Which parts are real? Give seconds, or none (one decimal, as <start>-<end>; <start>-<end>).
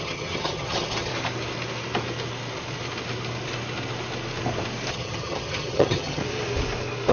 1.1-4.9; 6.2-7.1